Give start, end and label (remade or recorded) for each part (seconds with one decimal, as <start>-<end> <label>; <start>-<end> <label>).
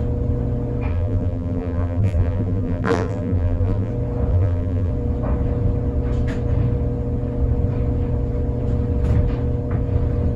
0.0-0.9 recorded; 0.9-3.9 remade; 3.9-4.3 recorded; 4.3-4.9 remade; 4.9-10.4 recorded